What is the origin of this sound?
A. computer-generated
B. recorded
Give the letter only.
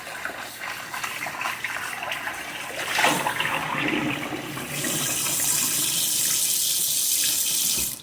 B